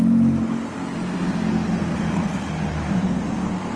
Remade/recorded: recorded